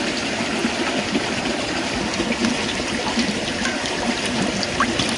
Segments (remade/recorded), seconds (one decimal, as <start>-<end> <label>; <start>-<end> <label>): 0.0-2.4 recorded; 2.4-5.2 remade